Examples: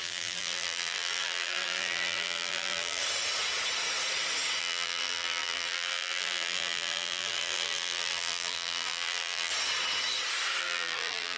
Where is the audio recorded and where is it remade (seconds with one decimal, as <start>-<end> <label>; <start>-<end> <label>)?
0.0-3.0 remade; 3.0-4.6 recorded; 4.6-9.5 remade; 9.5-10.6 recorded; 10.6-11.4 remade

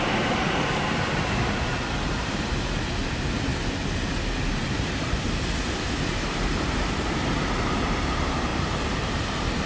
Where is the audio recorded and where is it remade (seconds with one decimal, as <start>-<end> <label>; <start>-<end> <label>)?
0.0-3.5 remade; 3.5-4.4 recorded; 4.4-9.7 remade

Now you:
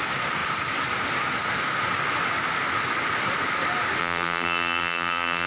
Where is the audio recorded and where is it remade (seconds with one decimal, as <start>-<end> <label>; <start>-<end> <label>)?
0.0-4.0 recorded; 4.0-5.5 remade